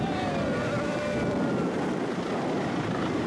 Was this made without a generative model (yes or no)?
yes